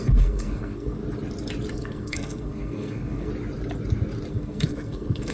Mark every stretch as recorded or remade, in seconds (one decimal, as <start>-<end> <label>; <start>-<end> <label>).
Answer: 0.0-1.0 remade; 1.0-1.7 recorded; 1.7-3.3 remade; 3.3-4.3 recorded; 4.3-5.3 remade